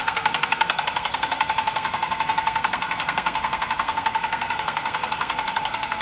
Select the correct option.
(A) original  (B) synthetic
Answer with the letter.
B